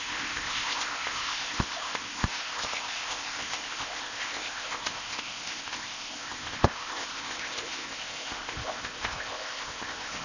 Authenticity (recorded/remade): remade